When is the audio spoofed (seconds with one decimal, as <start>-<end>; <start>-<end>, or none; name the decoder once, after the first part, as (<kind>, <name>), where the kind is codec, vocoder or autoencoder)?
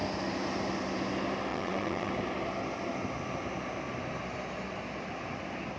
1.5-2.1 (vocoder, WaveNeXt)